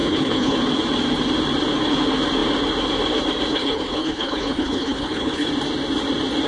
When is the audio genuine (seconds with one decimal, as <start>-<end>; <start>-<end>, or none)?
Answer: 0.6-3.5; 5.5-6.5